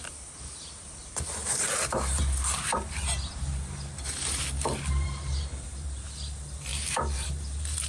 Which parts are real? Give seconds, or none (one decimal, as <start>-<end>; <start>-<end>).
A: none